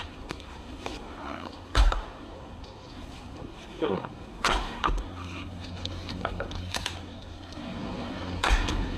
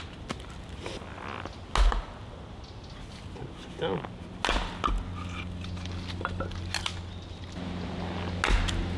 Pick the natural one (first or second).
second